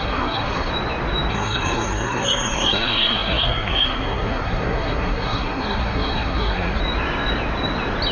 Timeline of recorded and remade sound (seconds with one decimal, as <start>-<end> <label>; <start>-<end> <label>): 0.0-0.7 remade; 0.7-1.3 recorded; 1.3-6.8 remade; 6.8-8.1 recorded